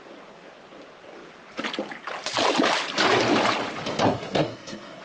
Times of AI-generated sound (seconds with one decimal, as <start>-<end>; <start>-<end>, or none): 4.0-5.0